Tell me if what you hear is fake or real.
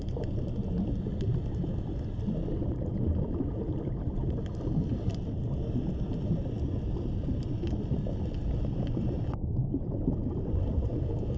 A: real